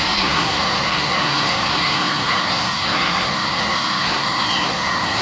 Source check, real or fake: fake